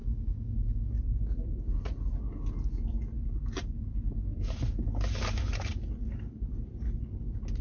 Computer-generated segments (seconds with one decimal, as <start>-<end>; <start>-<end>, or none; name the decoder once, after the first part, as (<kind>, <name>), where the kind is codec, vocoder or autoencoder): 0.0-0.9 (autoencoder, DAC-VAE)